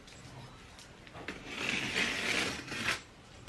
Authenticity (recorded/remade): recorded